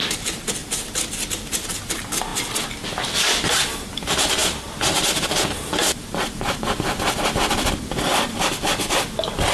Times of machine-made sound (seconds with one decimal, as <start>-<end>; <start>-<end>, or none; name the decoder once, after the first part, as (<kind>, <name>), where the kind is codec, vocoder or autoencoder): none